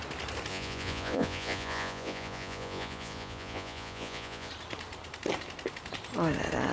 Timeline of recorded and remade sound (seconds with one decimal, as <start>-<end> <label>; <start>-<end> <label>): 0.0-0.5 recorded; 0.5-4.5 remade; 4.5-6.7 recorded